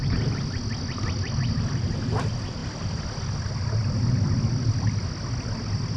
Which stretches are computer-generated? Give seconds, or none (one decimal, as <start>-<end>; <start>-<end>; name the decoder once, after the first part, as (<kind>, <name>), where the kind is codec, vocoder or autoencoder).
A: none